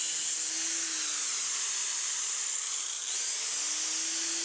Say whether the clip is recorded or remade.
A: recorded